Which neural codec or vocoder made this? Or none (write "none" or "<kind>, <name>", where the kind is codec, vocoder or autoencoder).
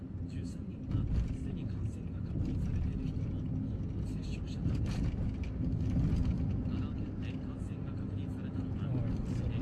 none